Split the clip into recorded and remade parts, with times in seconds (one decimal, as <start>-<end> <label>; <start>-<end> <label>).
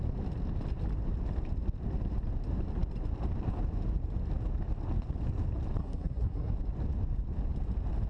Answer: 0.0-5.8 recorded; 5.8-6.5 remade; 6.5-8.1 recorded